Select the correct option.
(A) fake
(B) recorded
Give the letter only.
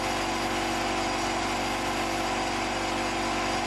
B